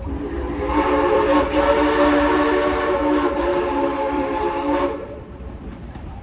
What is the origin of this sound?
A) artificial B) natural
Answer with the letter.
A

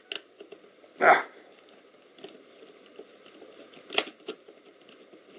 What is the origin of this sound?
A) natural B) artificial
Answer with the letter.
A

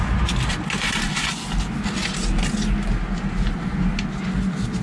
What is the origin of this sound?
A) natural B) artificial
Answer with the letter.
A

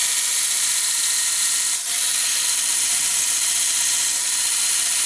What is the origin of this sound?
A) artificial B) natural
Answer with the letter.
B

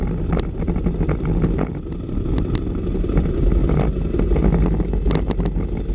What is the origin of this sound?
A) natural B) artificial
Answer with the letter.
A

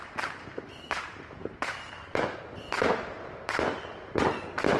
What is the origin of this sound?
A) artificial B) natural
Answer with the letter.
B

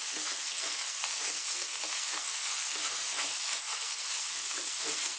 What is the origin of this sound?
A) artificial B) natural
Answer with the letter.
A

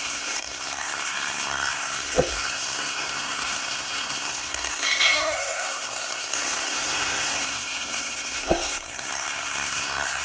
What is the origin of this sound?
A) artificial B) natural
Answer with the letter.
A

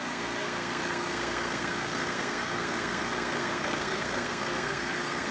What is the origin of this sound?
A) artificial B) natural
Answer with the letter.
A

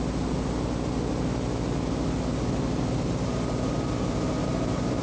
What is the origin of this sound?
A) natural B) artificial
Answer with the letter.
A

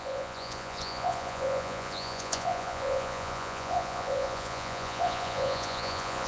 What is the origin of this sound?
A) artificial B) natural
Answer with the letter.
A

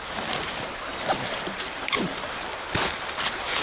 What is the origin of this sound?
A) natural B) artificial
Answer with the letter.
B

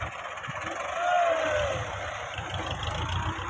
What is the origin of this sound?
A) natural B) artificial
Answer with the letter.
A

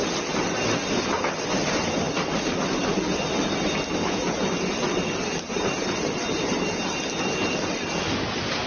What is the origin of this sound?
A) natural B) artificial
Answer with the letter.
A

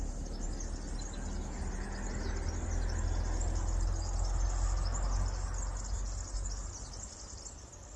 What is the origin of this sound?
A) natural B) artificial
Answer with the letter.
A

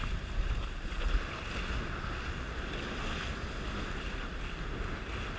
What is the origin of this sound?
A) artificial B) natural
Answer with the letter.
B